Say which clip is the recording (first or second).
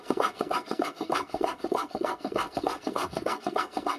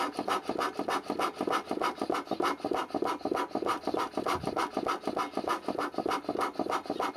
second